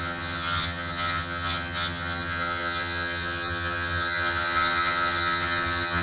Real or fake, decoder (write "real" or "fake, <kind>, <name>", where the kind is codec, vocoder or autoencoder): fake, vocoder, HiFi-GAN